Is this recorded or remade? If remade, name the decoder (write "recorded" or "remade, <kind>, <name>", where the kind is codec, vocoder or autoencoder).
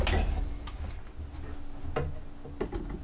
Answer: recorded